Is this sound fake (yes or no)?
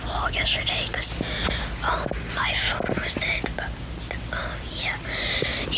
no